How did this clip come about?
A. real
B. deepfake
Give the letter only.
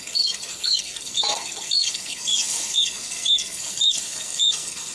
B